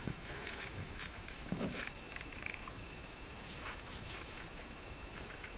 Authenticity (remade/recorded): remade